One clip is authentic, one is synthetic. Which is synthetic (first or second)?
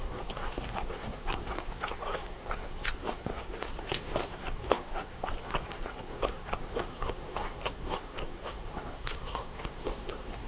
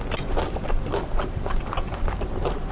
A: first